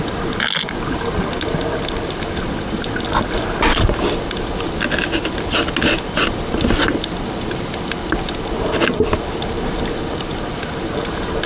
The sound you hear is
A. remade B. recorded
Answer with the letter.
B